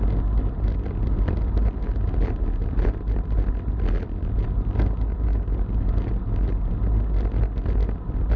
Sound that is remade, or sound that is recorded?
recorded